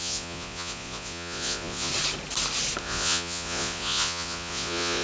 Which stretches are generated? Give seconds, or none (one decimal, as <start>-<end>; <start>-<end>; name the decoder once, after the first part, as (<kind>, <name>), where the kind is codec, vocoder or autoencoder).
0.0-1.9 (vocoder, Vocos); 2.8-5.0